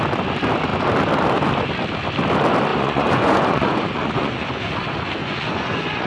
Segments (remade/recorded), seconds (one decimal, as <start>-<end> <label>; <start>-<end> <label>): 0.0-2.7 recorded; 2.7-4.7 remade; 4.7-5.2 recorded; 5.2-6.1 remade